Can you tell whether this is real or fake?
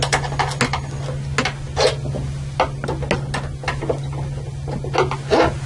real